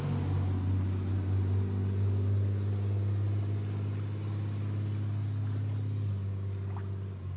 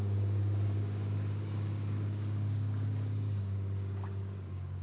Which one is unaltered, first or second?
first